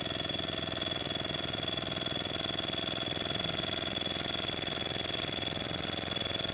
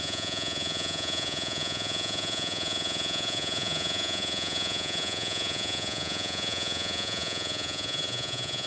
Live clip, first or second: first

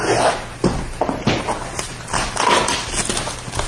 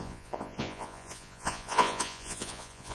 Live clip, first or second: first